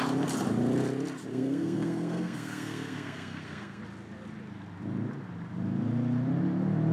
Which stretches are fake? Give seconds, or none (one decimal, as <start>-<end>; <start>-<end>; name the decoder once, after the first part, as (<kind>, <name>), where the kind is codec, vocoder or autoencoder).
1.3-3.8 (codec, SNAC)